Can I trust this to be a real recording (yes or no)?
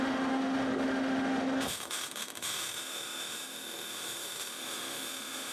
no